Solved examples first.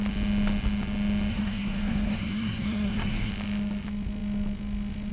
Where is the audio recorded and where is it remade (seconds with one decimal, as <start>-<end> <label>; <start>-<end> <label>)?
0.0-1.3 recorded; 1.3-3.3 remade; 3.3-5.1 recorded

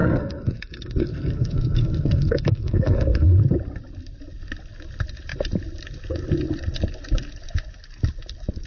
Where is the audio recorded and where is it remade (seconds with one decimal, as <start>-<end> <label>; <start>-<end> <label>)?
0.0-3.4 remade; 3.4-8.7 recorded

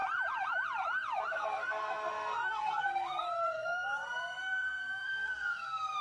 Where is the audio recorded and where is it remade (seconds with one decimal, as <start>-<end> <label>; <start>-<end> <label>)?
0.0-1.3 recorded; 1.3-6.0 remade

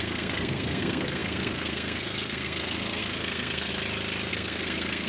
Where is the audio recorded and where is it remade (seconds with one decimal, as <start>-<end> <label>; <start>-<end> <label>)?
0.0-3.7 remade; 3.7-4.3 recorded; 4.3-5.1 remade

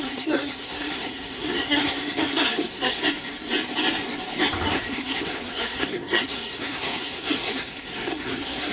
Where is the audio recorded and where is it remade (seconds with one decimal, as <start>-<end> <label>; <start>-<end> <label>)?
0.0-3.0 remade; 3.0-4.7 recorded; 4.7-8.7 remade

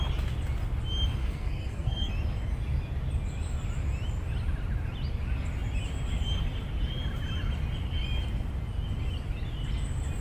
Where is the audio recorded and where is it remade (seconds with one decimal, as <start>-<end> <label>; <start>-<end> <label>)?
0.0-1.2 recorded; 1.2-2.1 remade; 2.1-10.2 recorded